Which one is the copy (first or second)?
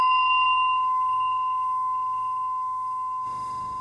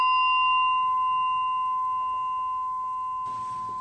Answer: first